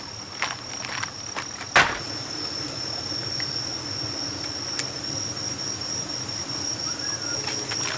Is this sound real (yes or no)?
yes